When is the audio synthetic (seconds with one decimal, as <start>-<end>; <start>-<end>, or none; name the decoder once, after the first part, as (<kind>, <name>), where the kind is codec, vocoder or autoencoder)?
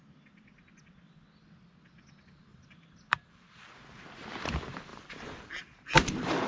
2.5-3.7 (vocoder, BigVGAN v2); 4.9-6.5